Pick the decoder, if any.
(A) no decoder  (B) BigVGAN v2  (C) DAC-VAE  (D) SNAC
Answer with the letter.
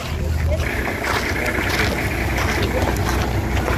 A